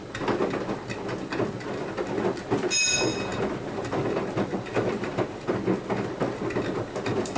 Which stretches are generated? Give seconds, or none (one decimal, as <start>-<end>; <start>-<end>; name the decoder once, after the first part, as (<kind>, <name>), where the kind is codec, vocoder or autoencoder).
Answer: none